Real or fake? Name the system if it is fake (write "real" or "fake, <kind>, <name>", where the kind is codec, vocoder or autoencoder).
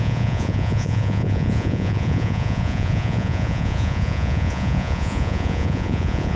fake, vocoder, Vocos